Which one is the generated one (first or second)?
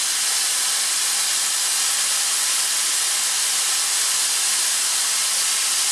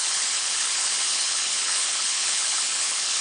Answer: second